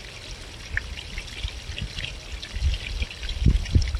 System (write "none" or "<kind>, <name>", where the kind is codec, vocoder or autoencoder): none